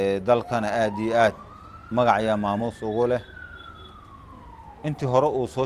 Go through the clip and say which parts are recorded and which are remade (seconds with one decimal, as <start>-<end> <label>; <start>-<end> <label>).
0.0-5.7 recorded